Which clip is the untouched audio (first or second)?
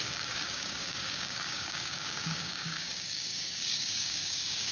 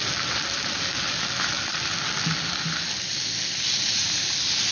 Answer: second